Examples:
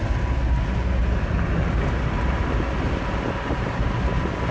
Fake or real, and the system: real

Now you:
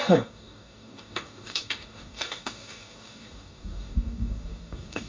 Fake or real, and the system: fake, codec, DAC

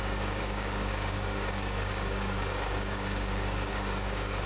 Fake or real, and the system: fake, codec, DAC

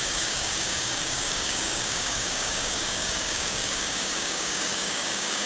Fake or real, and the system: fake, codec, DAC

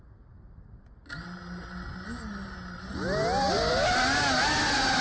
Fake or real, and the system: real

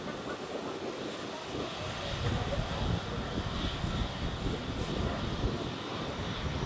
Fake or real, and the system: real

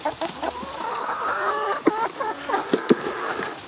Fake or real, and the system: fake, codec, DAC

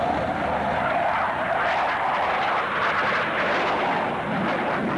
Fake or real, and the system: real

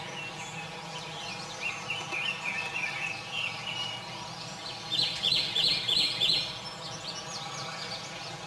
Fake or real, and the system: real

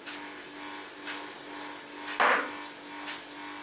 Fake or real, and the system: real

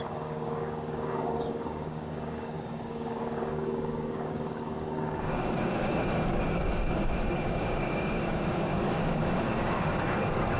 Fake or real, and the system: fake, codec, DAC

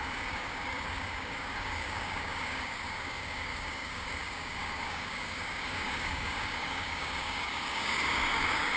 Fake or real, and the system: fake, codec, DAC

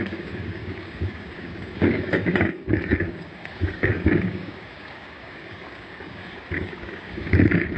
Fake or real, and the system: fake, codec, DAC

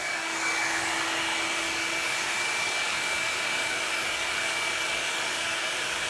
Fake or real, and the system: fake, codec, DAC